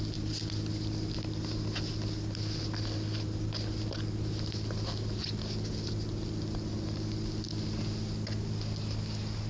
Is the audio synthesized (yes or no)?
no